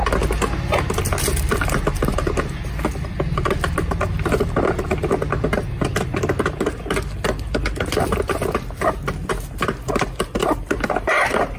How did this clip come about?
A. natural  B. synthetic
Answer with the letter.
A